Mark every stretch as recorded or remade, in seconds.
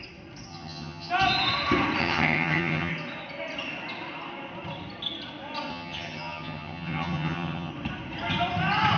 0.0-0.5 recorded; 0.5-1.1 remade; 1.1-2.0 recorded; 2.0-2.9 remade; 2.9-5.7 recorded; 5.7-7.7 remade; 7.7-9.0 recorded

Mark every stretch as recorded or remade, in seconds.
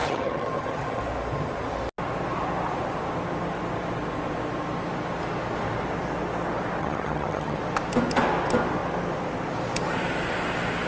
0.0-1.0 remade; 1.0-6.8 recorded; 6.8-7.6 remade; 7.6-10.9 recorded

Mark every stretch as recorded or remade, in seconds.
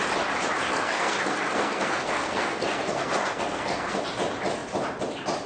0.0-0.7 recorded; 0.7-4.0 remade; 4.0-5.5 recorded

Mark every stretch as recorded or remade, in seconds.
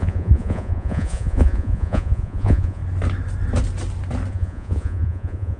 0.0-2.8 remade; 2.8-4.3 recorded; 4.3-5.6 remade